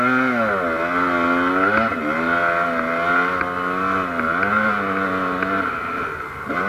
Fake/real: real